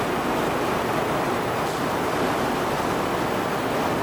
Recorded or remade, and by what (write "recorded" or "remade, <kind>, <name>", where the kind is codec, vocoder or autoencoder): recorded